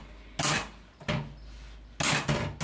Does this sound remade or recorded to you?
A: recorded